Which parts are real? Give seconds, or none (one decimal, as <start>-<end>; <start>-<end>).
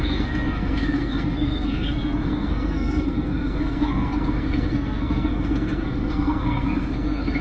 none